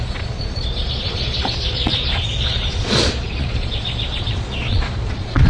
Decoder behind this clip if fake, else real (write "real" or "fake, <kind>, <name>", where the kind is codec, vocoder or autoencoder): fake, vocoder, Vocos